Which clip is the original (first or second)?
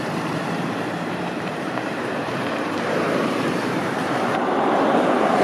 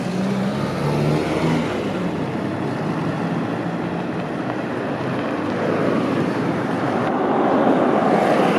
second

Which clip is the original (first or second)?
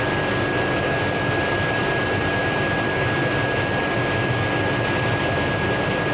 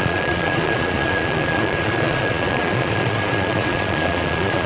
first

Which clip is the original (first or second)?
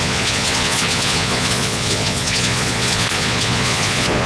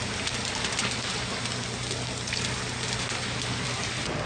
second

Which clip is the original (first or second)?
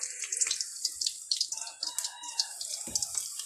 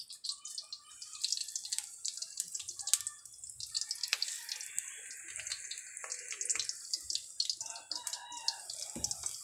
second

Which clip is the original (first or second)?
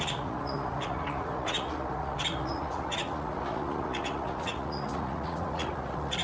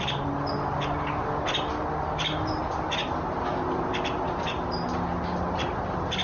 second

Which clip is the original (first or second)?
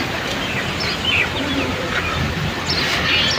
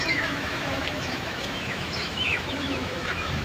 first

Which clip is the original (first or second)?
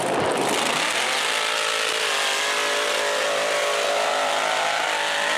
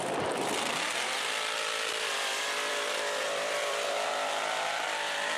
first